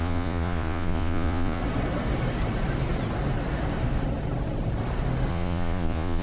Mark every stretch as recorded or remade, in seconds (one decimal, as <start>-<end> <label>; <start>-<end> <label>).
0.0-1.6 remade; 1.6-5.3 recorded; 5.3-6.2 remade